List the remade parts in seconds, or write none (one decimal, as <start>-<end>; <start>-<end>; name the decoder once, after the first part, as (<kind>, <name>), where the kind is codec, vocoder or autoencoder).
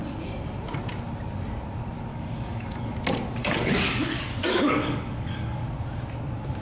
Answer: 2.1-2.9 (codec, DAC); 3.4-5.6